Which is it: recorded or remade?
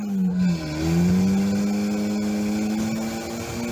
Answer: recorded